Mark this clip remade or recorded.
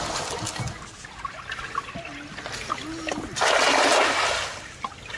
recorded